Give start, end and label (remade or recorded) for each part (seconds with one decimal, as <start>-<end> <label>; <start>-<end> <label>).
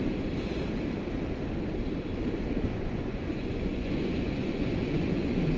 0.0-2.7 recorded; 2.7-5.6 remade